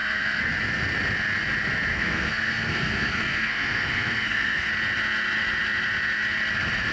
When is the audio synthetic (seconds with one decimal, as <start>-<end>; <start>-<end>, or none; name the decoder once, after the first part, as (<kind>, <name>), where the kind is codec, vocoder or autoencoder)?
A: 0.0-0.5 (codec, SNAC); 1.9-4.7